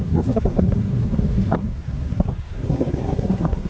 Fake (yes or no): yes